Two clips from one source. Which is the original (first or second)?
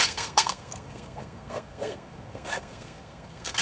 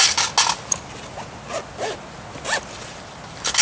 second